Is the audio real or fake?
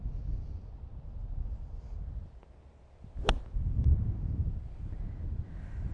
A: real